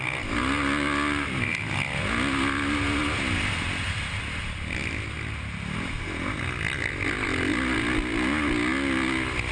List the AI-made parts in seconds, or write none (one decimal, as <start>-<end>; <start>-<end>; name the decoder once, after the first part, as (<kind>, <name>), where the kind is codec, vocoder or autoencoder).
none